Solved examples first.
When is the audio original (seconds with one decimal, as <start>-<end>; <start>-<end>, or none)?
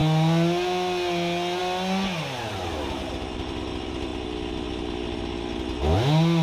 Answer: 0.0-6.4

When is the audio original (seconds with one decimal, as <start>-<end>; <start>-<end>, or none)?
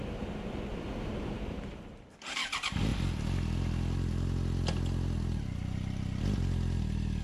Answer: 2.9-7.2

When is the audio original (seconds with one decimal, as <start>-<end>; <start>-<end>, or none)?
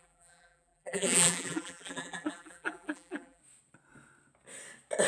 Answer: 3.4-5.1